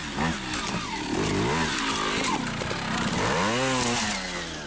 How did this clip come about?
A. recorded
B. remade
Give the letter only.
A